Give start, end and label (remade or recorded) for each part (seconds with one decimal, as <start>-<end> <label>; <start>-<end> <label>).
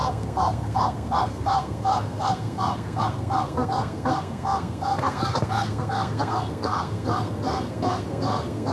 0.0-8.7 remade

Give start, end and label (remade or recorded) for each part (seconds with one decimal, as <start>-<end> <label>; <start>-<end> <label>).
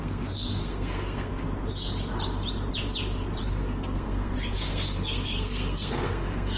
0.0-1.3 remade; 1.3-3.4 recorded; 3.4-6.6 remade